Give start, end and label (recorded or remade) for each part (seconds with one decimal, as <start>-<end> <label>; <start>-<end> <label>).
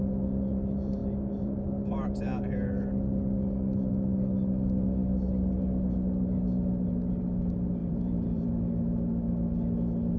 0.0-7.8 recorded; 7.8-8.5 remade; 8.5-10.2 recorded